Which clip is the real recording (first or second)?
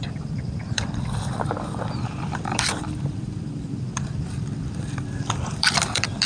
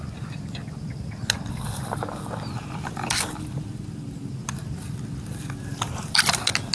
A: second